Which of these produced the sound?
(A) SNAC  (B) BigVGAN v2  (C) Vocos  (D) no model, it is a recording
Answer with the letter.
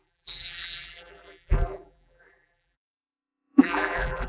B